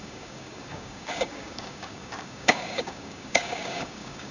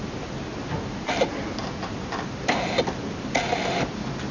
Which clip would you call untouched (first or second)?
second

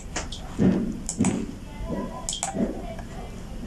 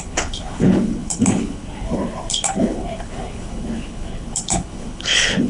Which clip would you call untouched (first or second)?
first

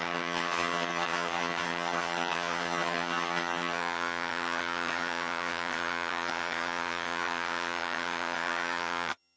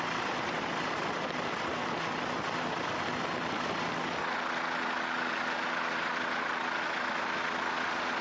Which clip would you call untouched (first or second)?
second